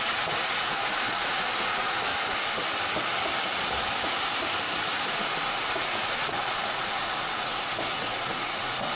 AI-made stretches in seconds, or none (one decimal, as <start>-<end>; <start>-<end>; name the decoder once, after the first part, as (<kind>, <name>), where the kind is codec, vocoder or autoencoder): 0.0-2.1 (vocoder, Vocos); 5.1-9.0